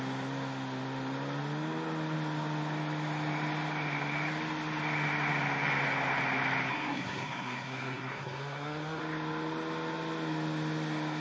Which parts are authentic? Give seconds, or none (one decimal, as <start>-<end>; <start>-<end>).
0.0-6.7; 9.0-11.2